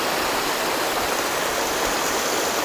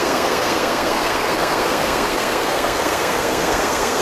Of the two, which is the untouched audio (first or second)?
first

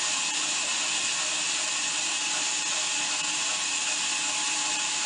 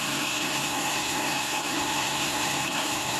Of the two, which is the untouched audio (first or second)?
first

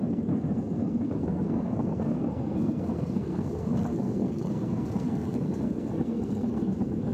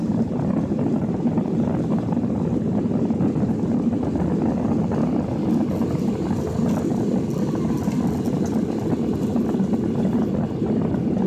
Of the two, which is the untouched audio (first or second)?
second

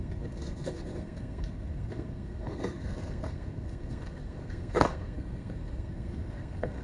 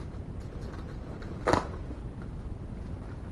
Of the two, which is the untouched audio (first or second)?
second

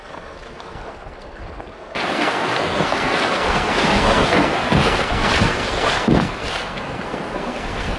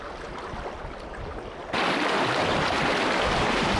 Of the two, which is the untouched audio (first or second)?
second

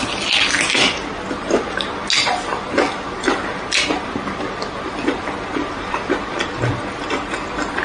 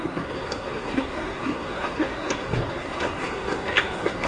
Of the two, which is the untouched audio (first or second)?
first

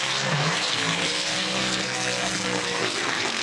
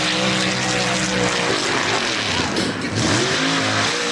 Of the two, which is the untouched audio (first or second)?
second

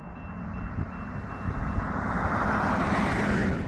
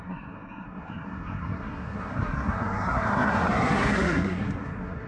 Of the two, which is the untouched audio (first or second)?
first